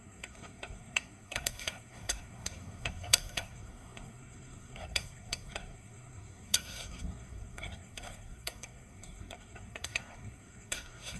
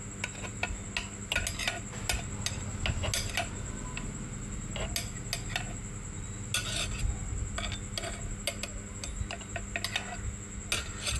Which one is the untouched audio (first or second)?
second